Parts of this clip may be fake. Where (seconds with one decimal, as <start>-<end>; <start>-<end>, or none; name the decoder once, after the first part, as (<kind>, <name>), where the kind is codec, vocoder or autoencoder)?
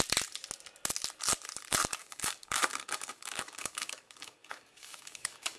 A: 2.0-5.6 (codec, DAC)